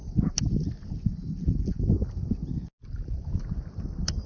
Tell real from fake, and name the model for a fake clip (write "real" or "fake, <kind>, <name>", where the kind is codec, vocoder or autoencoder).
real